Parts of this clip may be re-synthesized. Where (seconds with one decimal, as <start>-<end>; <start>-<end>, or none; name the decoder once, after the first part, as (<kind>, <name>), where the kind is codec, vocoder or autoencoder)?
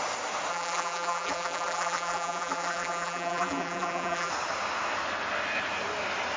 0.5-4.3 (vocoder, BigVGAN v2)